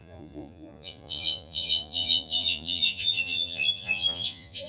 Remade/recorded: remade